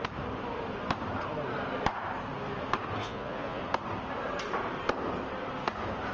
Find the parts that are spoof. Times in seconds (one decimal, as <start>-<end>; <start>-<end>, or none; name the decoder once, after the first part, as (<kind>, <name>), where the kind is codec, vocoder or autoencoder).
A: 3.0-3.6 (vocoder, Vocos)